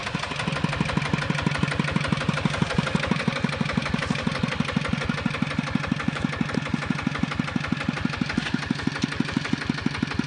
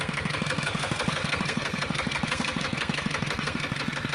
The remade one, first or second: second